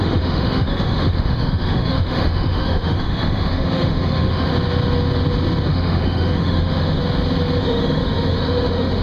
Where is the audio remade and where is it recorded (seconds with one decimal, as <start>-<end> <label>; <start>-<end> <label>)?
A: 0.0-4.5 remade; 4.5-5.7 recorded; 5.7-7.0 remade; 7.0-7.6 recorded; 7.6-9.0 remade